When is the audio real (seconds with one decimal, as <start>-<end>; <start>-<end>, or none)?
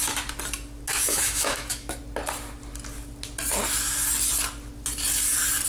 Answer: 0.0-0.9; 2.0-5.7